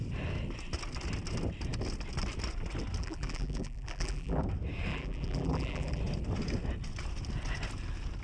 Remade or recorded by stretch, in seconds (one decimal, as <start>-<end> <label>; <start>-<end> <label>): 0.0-3.0 recorded; 3.0-4.4 remade; 4.4-4.9 recorded; 4.9-6.0 remade; 6.0-8.2 recorded